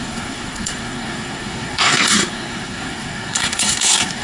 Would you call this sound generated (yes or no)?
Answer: yes